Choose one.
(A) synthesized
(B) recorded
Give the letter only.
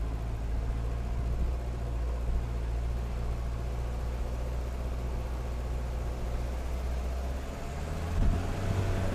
B